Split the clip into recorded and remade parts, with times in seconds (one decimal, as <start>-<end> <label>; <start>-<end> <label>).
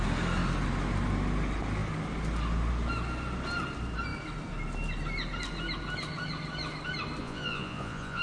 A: 0.0-7.2 recorded; 7.2-8.2 remade